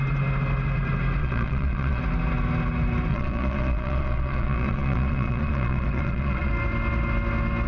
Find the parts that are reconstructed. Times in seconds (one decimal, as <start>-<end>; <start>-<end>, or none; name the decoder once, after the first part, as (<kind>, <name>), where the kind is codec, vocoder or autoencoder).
1.2-2.0 (vocoder, Vocos); 3.1-6.5